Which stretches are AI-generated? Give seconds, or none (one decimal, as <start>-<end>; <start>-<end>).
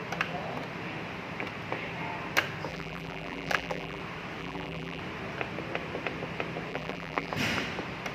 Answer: 2.7-4.0; 4.4-5.0; 6.7-7.3